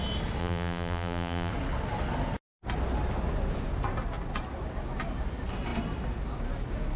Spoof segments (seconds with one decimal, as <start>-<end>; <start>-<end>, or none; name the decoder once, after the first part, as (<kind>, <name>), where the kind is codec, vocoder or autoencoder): 0.4-1.5 (vocoder, BigVGAN v2)